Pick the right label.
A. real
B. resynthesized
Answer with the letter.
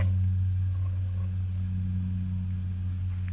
A